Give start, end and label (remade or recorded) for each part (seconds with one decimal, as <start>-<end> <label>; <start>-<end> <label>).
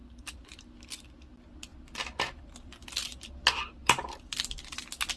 0.0-1.7 recorded; 1.7-3.3 remade; 3.3-3.8 recorded; 3.8-4.6 remade; 4.6-5.2 recorded